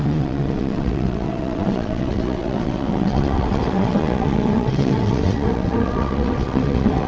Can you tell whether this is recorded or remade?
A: remade